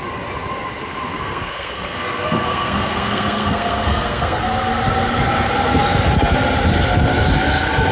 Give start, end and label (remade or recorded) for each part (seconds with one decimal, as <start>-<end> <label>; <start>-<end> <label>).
0.0-1.1 recorded; 1.1-4.4 remade; 4.4-7.9 recorded